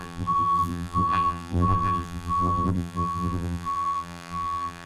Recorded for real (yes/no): no